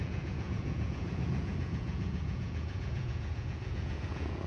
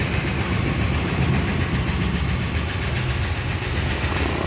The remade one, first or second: first